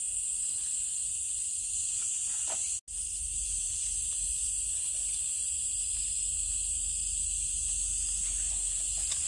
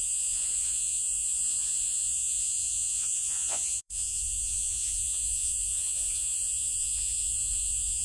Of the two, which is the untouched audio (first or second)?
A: first